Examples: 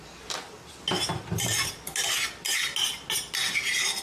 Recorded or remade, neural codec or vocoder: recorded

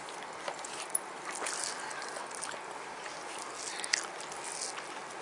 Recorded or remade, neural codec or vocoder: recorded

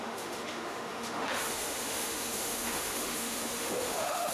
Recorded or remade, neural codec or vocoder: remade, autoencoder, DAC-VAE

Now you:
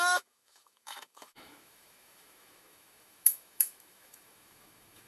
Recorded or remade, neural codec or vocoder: remade, autoencoder, DAC-VAE